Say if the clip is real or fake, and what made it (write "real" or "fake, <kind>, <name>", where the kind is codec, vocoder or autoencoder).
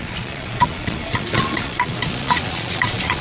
fake, vocoder, Vocos